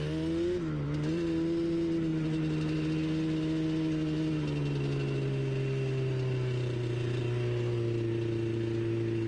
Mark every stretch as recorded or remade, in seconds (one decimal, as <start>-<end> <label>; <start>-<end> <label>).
0.0-9.3 recorded